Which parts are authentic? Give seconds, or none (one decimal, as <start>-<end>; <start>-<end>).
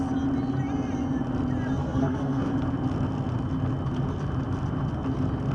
0.0-1.8; 2.5-5.5